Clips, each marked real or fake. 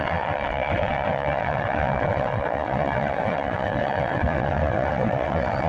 fake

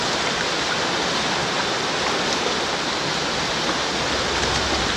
real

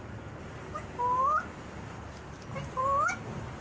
real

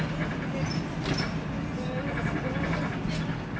real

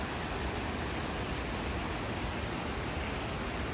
real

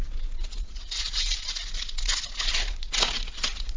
fake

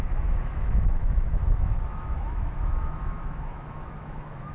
fake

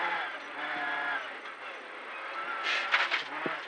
real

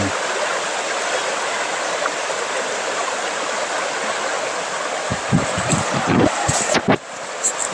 real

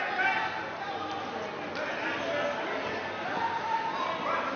real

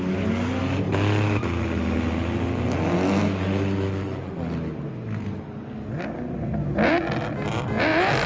real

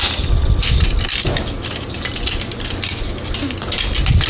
real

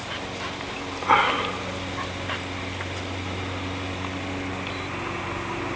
real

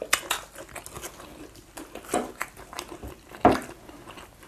real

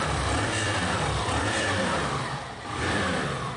fake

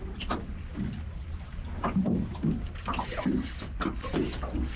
real